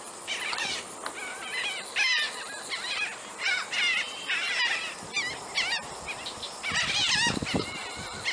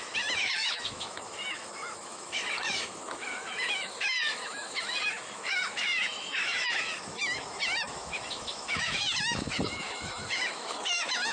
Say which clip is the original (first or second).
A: first